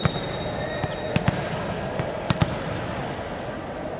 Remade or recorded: recorded